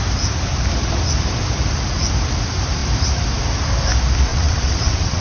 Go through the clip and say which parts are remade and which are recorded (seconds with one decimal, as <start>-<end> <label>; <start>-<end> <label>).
0.0-4.3 recorded; 4.3-5.2 remade